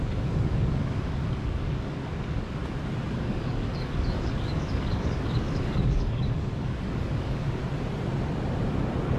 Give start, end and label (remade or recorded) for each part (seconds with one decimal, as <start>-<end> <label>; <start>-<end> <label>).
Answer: 0.0-2.6 remade; 2.6-3.1 recorded; 3.1-7.6 remade; 7.6-9.2 recorded